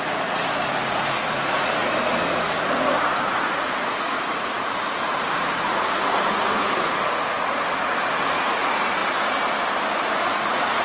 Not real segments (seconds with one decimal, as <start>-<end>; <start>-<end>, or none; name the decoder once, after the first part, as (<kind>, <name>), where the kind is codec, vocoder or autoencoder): 0.0-9.0 (vocoder, Vocos); 10.0-10.8